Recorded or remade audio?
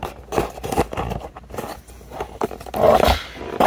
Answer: recorded